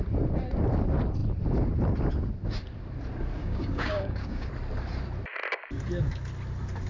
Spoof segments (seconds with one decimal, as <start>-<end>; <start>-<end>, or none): 3.4-4.5